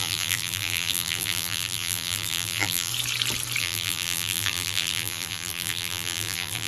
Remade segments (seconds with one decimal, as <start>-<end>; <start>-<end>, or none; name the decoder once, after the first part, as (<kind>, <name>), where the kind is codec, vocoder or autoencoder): 0.0-2.9 (vocoder, BigVGAN v2); 3.6-6.7